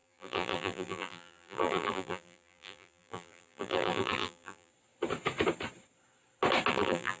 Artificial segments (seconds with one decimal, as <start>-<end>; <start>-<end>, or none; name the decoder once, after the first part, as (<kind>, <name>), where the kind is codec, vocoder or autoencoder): 0.0-4.7 (vocoder, BigVGAN v2); 6.7-7.2